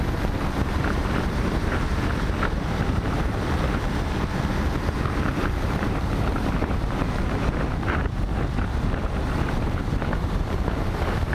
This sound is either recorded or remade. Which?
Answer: remade